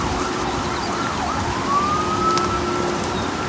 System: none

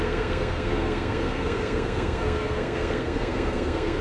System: codec, SNAC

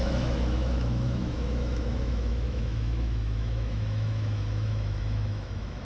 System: autoencoder, DAC-VAE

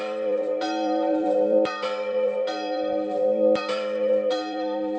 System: vocoder, BigVGAN v2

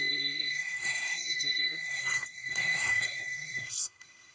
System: codec, SNAC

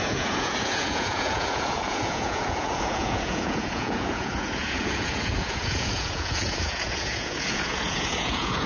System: vocoder, Vocos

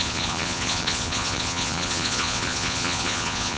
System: vocoder, Vocos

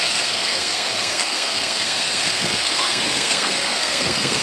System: codec, SNAC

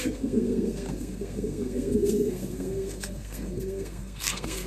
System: codec, SNAC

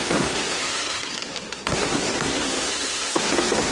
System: codec, SNAC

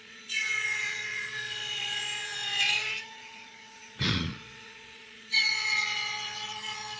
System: vocoder, Vocos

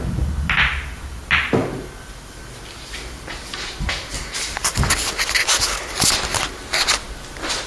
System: none